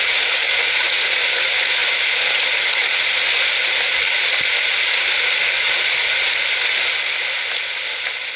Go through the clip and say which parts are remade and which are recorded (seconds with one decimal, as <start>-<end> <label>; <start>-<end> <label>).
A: 0.0-8.4 recorded